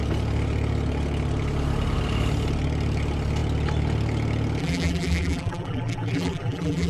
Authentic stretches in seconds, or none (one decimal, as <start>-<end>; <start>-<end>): 0.0-4.6